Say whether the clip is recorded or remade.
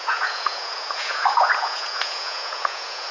remade